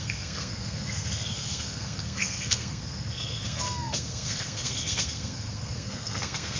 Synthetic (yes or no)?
yes